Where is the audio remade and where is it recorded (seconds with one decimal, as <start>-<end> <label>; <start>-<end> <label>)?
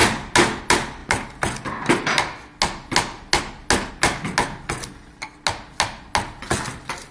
0.0-7.1 recorded